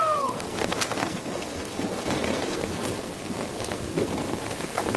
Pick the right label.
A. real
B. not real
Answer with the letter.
B